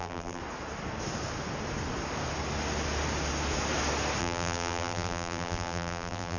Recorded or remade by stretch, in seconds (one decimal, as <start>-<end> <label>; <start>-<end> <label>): 0.0-0.4 remade; 0.4-4.2 recorded; 4.2-6.4 remade